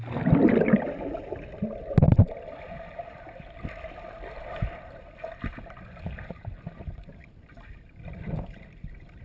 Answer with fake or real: real